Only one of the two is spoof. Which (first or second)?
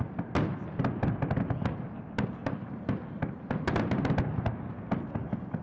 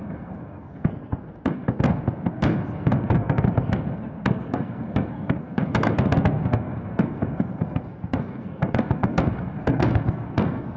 second